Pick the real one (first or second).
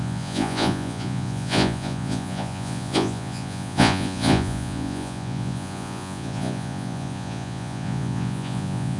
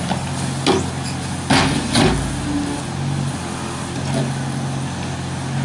second